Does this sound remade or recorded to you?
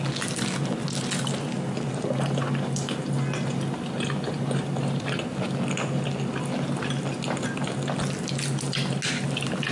recorded